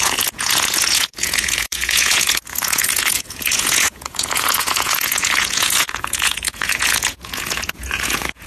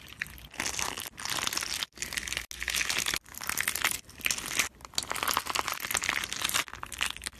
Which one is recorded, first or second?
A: second